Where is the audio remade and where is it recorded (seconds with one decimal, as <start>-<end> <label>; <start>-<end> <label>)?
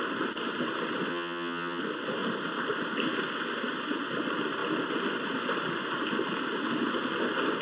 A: 0.0-1.1 recorded; 1.1-1.8 remade; 1.8-7.6 recorded